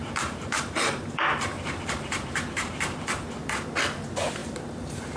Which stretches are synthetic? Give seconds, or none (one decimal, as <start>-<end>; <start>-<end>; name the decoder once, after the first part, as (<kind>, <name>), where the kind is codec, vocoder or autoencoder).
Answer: 0.0-3.1 (vocoder, BigVGAN v2); 4.4-5.2